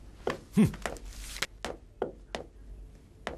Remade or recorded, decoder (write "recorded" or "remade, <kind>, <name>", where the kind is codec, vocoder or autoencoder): recorded